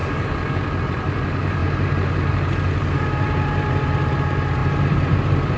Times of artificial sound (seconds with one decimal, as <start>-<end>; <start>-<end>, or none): 0.8-5.6